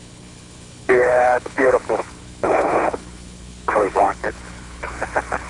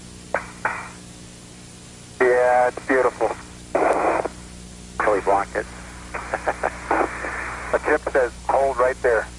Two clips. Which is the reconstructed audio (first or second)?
first